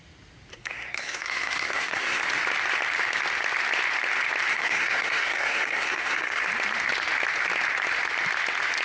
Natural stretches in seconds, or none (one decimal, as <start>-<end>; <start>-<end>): 0.0-0.5; 2.2-4.5; 6.4-8.8